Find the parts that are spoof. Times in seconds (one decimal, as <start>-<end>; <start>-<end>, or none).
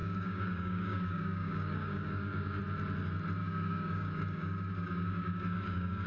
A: 0.0-2.6; 3.4-6.1